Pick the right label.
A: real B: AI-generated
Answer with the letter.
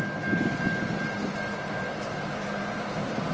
A